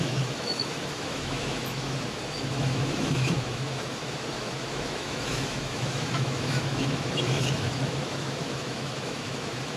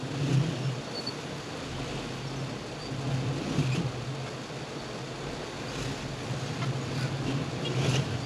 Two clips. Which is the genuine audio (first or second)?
second